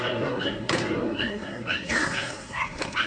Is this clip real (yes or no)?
no